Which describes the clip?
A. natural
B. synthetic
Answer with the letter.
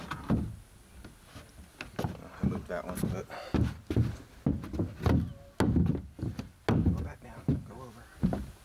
A